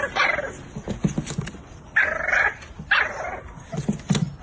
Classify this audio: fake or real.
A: real